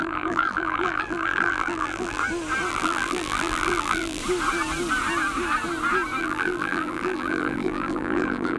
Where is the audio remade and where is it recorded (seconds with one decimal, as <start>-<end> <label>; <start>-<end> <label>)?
0.0-2.2 remade; 2.2-2.7 recorded; 2.7-4.2 remade; 4.2-6.2 recorded; 6.2-8.6 remade